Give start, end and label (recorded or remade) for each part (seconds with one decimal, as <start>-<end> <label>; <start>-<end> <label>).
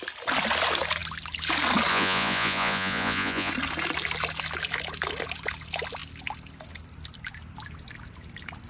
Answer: 0.0-1.9 recorded; 1.9-3.5 remade; 3.5-8.7 recorded